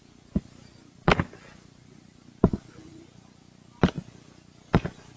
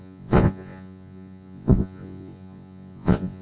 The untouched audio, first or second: first